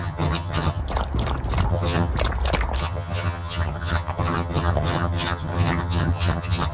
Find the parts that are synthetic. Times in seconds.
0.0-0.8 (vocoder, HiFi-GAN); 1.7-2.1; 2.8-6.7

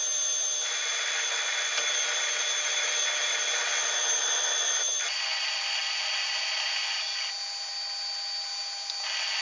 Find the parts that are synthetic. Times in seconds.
none

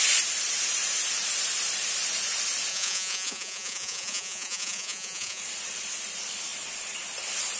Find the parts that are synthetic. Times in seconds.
2.7-5.4 (vocoder, Vocos)

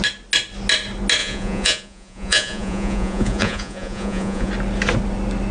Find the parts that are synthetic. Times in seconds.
1.2-4.5 (vocoder, Vocos)

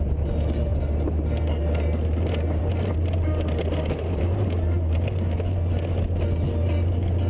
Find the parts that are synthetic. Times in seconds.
none

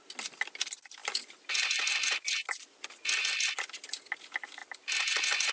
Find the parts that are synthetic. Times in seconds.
none